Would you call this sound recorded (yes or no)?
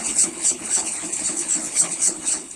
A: no